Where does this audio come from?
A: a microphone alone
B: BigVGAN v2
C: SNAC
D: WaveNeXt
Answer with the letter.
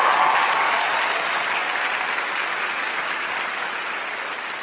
A